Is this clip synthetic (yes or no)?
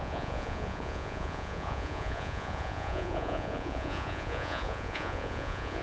yes